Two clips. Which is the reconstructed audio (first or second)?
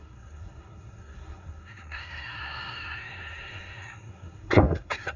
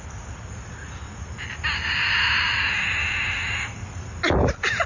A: first